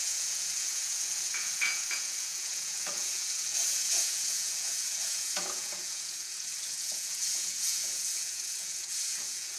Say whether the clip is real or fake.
fake